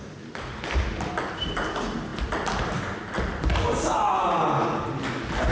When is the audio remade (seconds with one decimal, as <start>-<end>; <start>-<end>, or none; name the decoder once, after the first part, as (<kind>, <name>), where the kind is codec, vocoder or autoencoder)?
none